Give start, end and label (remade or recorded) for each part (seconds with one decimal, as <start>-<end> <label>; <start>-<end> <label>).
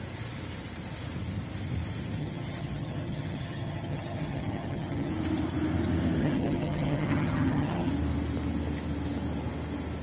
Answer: 0.0-2.2 recorded; 2.2-5.1 remade; 5.1-6.2 recorded; 6.2-7.9 remade; 7.9-10.0 recorded